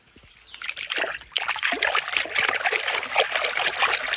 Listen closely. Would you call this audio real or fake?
real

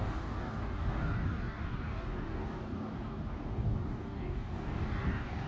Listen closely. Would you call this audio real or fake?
fake